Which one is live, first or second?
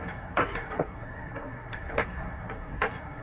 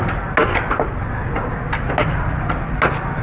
second